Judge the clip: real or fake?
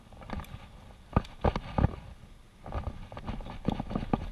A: real